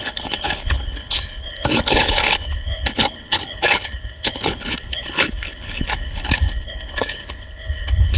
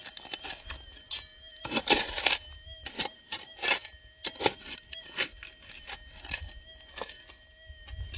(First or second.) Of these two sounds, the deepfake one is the first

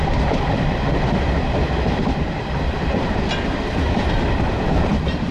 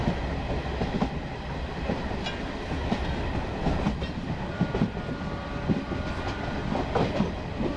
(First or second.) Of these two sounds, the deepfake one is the first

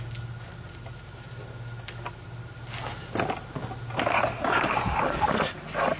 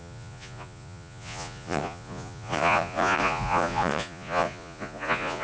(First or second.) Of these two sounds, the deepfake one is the second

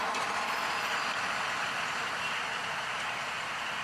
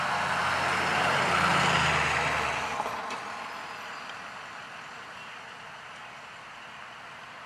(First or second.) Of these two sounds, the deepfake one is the first